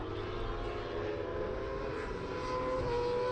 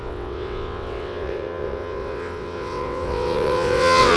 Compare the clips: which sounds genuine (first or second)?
first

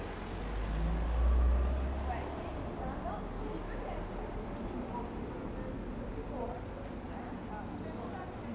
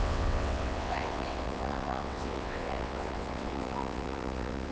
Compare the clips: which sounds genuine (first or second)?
first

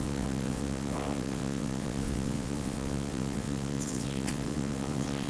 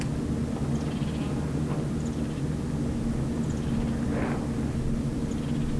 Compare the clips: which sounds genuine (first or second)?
second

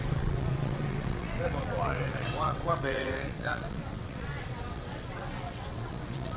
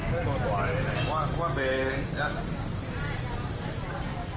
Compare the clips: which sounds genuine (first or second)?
second